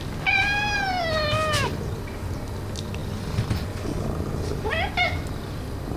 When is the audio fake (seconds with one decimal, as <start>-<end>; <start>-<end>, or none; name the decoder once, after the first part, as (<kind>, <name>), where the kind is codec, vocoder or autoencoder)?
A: none